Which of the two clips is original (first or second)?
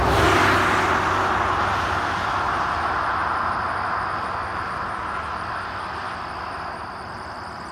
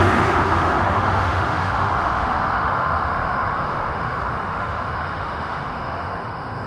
first